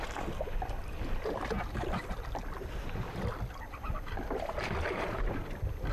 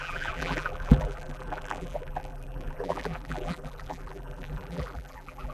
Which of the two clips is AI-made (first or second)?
second